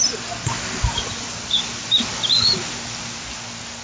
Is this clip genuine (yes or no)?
yes